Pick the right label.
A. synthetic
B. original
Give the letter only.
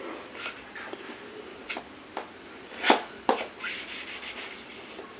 B